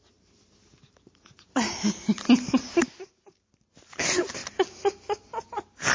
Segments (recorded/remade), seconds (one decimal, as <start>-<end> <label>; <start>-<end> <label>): 0.0-4.4 remade; 4.4-5.5 recorded; 5.5-5.9 remade